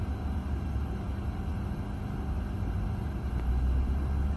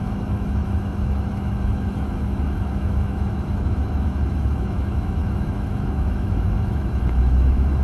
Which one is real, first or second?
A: first